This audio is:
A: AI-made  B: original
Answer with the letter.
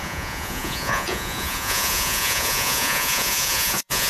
A